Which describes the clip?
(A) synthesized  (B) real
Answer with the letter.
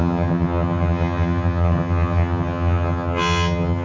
A